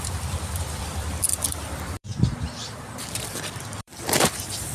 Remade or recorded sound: remade